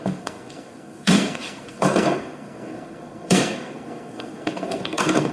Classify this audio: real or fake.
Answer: fake